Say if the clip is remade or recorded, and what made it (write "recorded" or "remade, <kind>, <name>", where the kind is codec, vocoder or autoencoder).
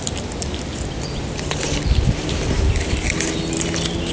recorded